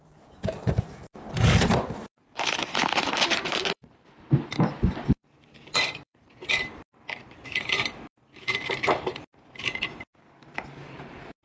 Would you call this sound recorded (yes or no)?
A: no